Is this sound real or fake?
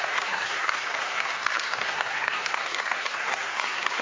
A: fake